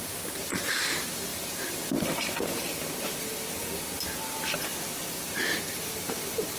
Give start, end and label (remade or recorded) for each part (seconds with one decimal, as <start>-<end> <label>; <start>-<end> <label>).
0.0-6.6 recorded

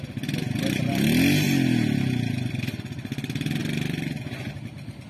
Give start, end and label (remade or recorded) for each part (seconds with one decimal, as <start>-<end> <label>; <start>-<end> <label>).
0.0-5.1 recorded

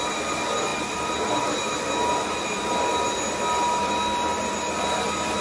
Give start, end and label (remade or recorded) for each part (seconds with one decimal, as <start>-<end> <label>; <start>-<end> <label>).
0.0-5.4 recorded